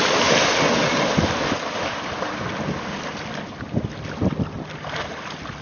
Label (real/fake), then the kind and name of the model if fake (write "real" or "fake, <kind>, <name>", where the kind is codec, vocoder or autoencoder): real